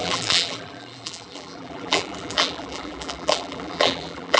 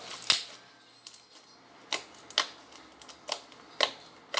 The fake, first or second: first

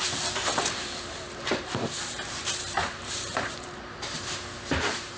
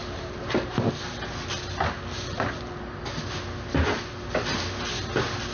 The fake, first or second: first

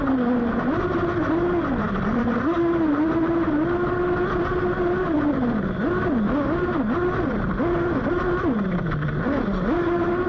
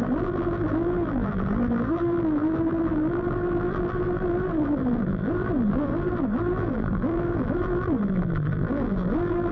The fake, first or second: second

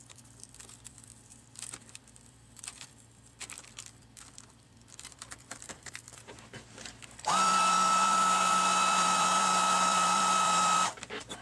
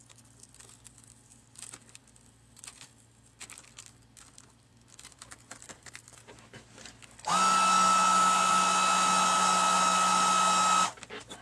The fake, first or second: first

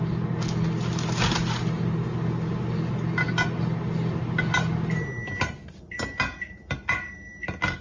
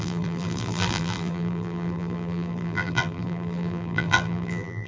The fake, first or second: second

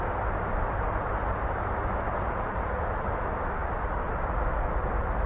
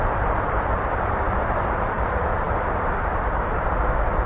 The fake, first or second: second